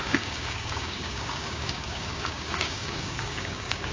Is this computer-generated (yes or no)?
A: yes